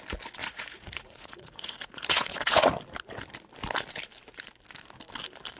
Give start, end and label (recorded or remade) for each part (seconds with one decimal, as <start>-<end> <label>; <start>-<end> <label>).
0.0-0.4 recorded; 0.4-2.7 remade; 2.7-5.6 recorded